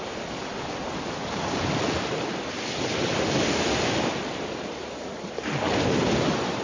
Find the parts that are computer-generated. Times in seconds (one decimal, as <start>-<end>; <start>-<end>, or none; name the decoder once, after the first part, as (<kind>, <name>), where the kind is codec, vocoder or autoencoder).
none